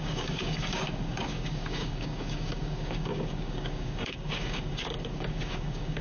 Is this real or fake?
fake